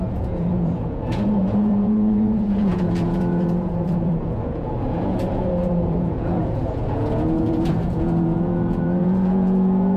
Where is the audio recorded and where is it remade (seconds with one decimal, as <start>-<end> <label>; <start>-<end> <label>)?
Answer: 0.0-10.0 remade